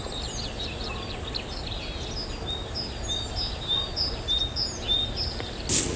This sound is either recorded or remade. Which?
recorded